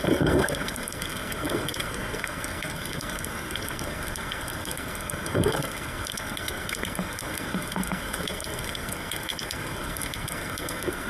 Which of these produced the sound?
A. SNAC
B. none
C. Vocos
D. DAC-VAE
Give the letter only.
A